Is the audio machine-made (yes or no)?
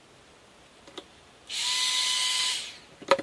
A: no